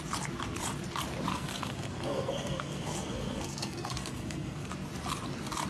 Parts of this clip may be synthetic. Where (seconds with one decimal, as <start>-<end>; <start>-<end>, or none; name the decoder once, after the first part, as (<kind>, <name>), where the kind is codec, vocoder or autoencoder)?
1.3-4.7 (codec, SNAC)